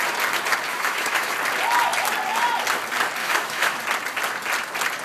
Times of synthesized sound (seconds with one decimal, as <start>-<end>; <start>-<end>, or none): 0.7-1.3; 3.2-3.8